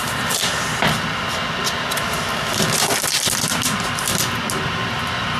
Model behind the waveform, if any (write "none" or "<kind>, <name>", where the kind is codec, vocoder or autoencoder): none